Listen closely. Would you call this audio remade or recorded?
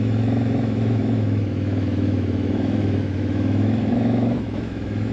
remade